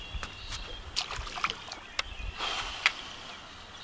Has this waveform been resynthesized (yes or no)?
no